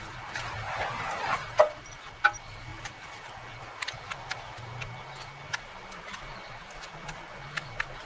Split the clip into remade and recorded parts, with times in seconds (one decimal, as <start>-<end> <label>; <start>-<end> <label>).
0.0-8.1 recorded